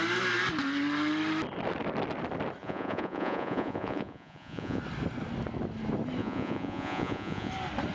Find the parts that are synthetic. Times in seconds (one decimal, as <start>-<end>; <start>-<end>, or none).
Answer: 2.6-4.8; 6.2-7.5